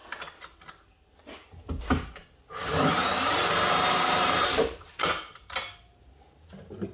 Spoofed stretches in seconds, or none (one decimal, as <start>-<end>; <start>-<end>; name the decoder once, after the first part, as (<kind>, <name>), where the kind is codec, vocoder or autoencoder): 2.9-5.1 (vocoder, BigVGAN v2); 5.8-6.9